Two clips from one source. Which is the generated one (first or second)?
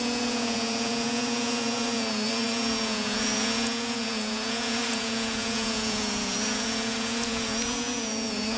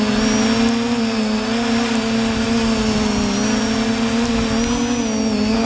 first